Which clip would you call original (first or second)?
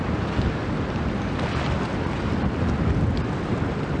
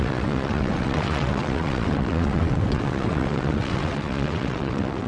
first